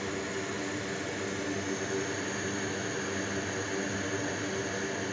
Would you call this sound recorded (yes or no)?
yes